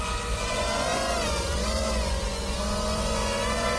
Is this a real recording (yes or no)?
no